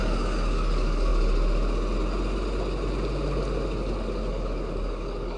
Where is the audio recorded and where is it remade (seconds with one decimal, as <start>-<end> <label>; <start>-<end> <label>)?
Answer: 0.0-1.1 remade; 1.1-4.3 recorded; 4.3-5.4 remade

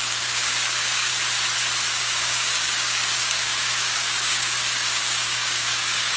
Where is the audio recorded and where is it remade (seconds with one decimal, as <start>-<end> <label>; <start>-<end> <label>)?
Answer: 0.0-1.1 remade; 1.1-1.9 recorded; 1.9-6.2 remade

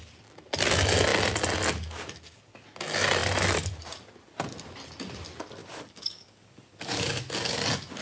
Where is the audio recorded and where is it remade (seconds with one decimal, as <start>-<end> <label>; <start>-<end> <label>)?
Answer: 0.0-5.6 recorded; 5.6-7.6 remade; 7.6-8.0 recorded